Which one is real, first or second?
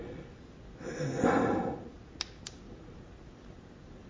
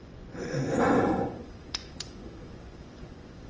first